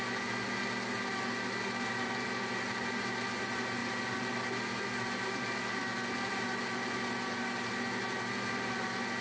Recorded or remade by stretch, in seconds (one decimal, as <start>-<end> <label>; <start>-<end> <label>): 0.0-9.2 recorded